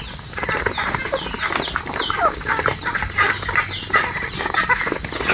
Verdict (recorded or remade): recorded